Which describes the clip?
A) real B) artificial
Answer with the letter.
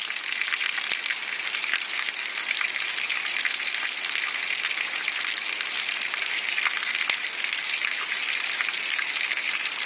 A